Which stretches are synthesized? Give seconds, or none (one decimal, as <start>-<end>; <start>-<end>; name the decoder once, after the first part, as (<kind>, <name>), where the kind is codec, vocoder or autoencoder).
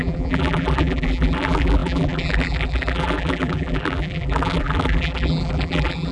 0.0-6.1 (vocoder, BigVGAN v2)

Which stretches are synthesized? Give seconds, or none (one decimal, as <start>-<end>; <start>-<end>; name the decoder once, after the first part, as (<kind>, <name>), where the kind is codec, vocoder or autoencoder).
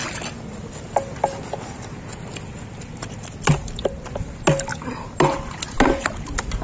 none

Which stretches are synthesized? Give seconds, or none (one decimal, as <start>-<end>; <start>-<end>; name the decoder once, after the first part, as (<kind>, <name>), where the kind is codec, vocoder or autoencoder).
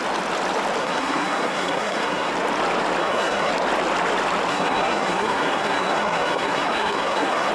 0.8-2.3 (codec, SNAC); 3.0-3.5; 4.5-7.5